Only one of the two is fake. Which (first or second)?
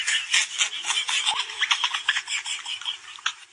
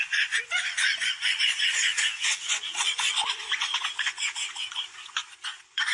second